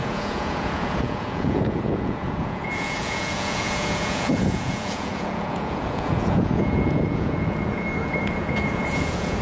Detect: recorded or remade remade